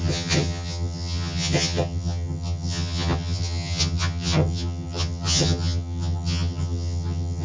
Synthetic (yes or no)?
yes